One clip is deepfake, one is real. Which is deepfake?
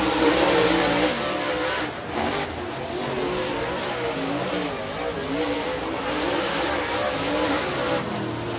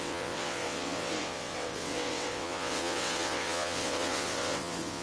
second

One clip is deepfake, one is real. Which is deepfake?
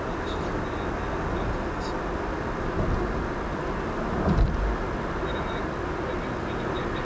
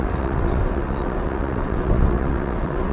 second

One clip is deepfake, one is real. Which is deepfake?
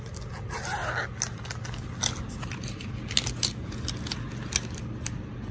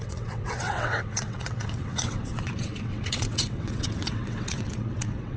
second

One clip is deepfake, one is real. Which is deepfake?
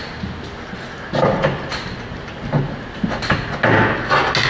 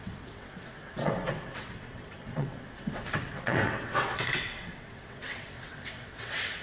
second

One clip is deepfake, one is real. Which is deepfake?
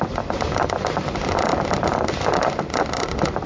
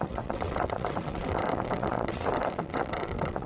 second